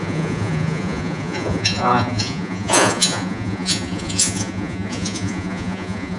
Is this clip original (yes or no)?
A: no